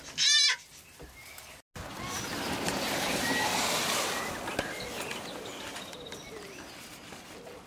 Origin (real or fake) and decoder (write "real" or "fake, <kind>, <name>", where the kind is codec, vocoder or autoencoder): real